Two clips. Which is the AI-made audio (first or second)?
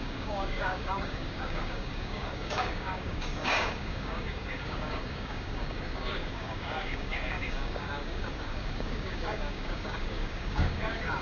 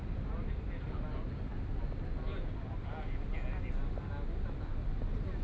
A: first